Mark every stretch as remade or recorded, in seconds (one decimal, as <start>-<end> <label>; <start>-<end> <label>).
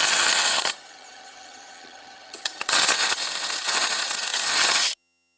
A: 0.0-5.4 remade